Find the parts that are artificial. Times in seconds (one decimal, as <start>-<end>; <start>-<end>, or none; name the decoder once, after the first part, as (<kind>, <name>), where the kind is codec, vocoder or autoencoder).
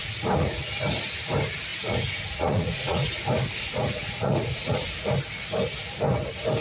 0.0-0.7 (vocoder, Vocos); 1.7-3.1; 3.7-4.9